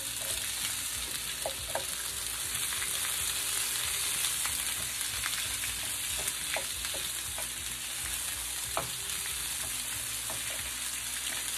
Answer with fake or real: real